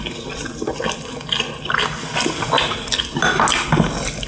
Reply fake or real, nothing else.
real